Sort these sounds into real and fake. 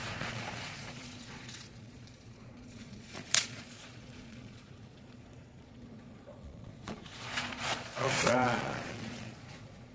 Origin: fake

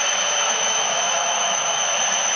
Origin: fake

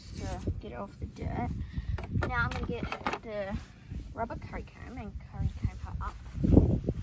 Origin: real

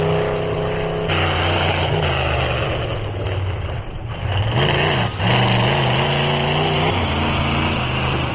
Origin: real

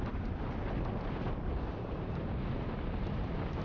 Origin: real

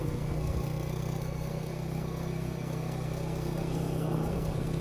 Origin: fake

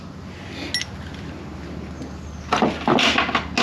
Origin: real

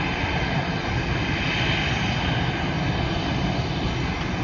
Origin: real